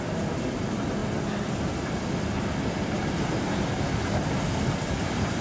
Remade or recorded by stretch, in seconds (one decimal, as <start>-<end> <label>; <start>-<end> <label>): 0.0-5.4 recorded